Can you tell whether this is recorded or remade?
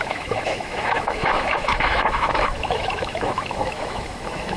remade